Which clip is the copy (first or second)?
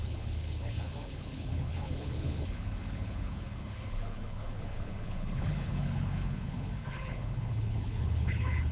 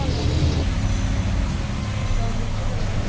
first